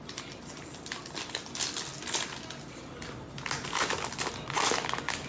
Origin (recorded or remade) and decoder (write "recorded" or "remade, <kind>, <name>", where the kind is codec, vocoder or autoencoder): recorded